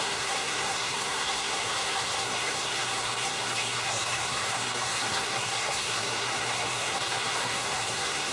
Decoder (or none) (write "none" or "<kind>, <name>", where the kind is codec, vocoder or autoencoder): codec, SNAC